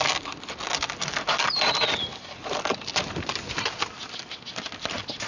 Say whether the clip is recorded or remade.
recorded